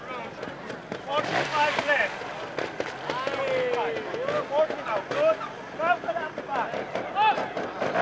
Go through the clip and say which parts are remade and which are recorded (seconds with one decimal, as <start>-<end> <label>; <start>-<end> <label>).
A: 0.0-8.0 recorded